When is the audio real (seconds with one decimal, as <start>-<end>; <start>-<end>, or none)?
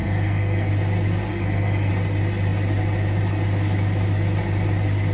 0.7-1.3; 1.9-5.1